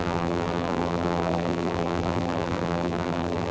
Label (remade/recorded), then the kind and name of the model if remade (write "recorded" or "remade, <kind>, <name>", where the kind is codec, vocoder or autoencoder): remade, vocoder, BigVGAN v2